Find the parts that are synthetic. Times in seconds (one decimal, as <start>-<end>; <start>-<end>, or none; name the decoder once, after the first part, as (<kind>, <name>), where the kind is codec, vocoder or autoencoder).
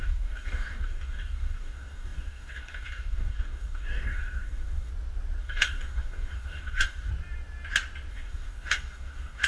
0.0-4.9 (codec, DAC); 5.4-7.1; 8.1-9.5